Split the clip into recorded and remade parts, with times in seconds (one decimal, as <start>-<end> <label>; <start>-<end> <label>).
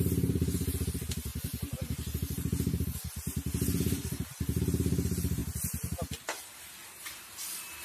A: 0.0-7.8 recorded